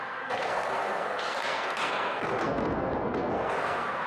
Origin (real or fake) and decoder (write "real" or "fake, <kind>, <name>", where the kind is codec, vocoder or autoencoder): fake, codec, SNAC